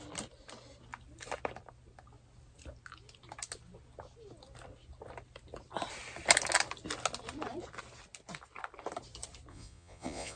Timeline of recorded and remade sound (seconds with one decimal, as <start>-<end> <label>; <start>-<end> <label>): 0.0-9.5 recorded; 9.5-10.4 remade